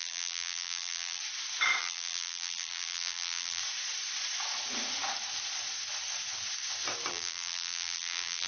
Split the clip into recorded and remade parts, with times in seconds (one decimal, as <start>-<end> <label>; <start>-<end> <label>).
0.0-1.2 remade; 1.2-1.8 recorded; 1.8-3.6 remade; 3.6-7.1 recorded; 7.1-8.5 remade